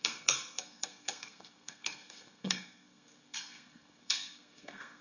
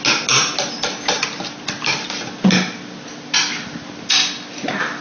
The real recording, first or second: second